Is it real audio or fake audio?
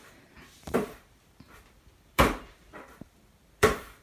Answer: fake